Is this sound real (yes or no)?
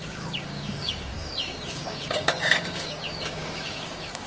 no